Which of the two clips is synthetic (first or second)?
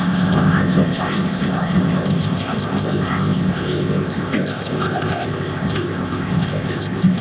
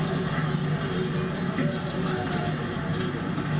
first